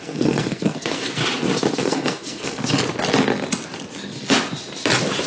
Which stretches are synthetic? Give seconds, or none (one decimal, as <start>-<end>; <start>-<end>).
0.0-1.2; 1.8-2.6